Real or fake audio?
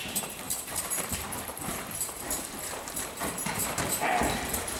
fake